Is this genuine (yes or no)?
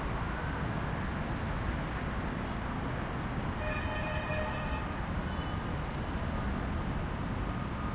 yes